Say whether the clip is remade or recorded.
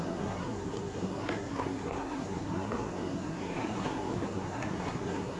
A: remade